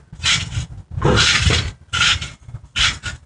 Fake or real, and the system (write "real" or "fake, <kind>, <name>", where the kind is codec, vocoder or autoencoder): real